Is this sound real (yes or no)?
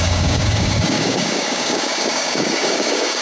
no